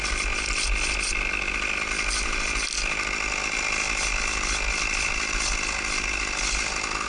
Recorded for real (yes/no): yes